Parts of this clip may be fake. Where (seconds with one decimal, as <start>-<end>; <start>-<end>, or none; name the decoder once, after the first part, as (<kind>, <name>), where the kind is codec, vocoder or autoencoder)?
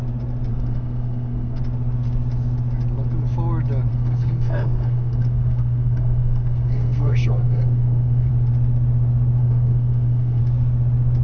0.5-1.6 (codec, SNAC); 3.9-8.3; 9.4-10.4